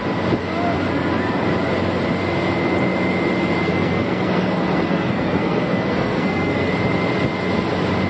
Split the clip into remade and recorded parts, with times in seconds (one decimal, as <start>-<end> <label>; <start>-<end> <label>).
0.0-3.6 recorded; 3.6-6.7 remade; 6.7-8.1 recorded